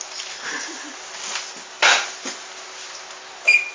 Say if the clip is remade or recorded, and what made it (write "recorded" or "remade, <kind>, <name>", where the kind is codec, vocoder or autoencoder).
recorded